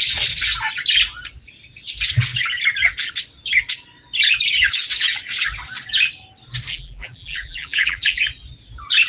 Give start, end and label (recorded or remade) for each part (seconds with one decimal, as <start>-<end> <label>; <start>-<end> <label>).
0.0-6.7 recorded; 6.7-8.2 remade; 8.2-9.1 recorded